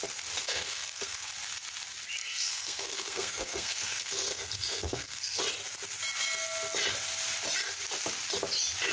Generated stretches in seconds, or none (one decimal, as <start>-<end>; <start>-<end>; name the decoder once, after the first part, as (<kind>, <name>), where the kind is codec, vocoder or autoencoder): 0.4-1.3 (codec, SNAC); 2.2-5.4